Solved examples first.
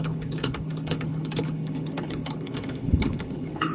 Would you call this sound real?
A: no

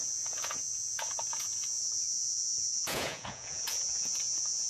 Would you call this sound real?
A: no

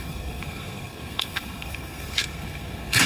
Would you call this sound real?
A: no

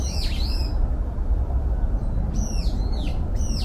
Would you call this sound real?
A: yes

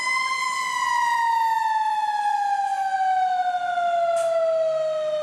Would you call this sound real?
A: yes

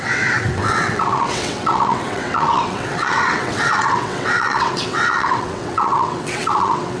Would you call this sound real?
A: no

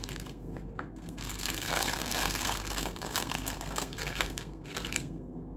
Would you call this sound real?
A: no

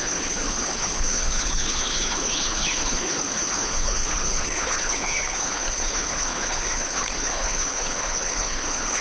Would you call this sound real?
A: no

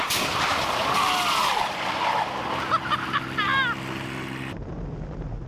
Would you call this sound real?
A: yes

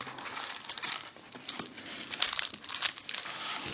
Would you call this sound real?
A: yes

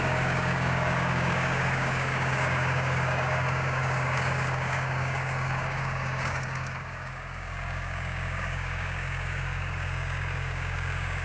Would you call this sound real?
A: no